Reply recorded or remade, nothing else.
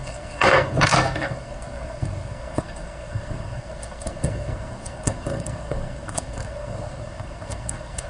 remade